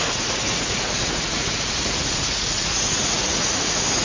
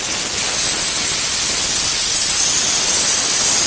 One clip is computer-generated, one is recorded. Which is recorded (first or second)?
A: second